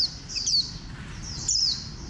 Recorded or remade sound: recorded